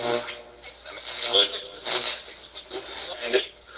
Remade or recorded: recorded